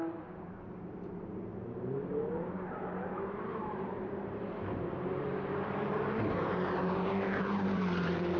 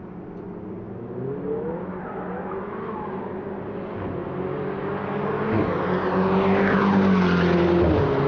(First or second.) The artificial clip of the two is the first